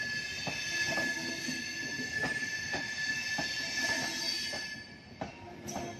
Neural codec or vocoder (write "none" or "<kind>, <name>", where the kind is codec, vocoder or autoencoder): none